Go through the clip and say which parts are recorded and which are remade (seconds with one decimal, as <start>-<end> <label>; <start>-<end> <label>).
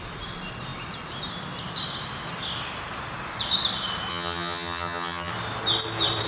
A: 0.0-4.1 recorded; 4.1-5.3 remade; 5.3-6.3 recorded